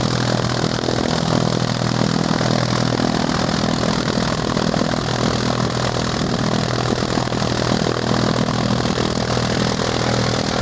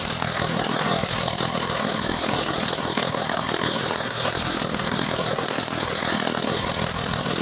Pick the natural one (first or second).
first